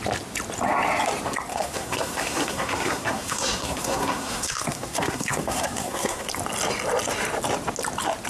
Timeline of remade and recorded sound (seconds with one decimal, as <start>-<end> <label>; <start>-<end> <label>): 0.0-1.5 recorded; 1.5-6.3 remade; 6.3-8.3 recorded